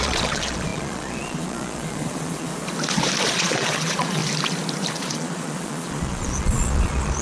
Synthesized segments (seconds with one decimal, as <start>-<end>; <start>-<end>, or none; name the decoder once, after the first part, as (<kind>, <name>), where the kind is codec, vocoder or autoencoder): 0.0-2.5 (vocoder, Vocos); 3.2-4.2; 4.9-7.2